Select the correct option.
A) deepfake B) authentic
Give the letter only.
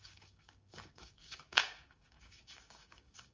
A